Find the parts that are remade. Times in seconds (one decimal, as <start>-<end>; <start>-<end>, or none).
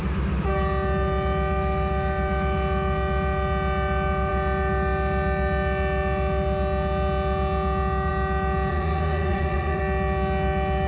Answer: 8.7-9.8